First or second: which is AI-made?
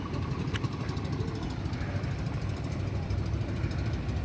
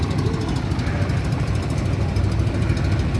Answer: first